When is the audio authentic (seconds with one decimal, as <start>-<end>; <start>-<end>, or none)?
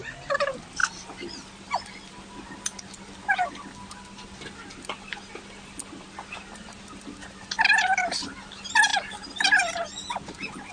0.8-4.7; 8.9-10.7